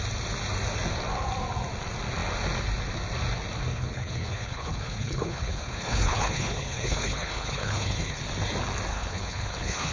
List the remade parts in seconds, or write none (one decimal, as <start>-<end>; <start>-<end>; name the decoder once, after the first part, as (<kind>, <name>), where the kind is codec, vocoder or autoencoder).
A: 3.7-8.2 (codec, HILCodec); 8.9-9.9